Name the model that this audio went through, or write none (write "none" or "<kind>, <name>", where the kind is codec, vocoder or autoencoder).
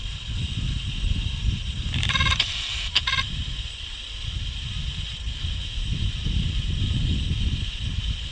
vocoder, BigVGAN v2